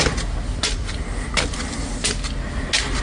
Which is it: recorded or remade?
recorded